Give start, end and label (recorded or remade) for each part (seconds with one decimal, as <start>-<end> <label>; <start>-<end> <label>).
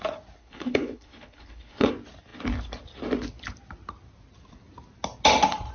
0.0-0.4 recorded; 0.4-1.9 remade; 1.9-5.7 recorded